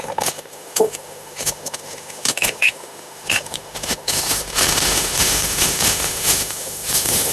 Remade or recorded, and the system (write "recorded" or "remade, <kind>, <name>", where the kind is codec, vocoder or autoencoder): remade, autoencoder, DAC-VAE